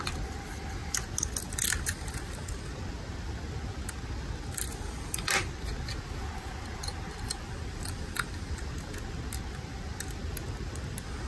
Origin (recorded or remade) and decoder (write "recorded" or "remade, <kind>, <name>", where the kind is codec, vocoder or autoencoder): recorded